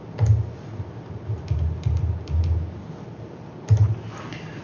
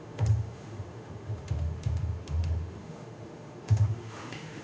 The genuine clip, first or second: first